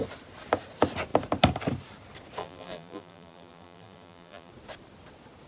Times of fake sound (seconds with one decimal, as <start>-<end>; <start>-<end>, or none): 2.4-4.5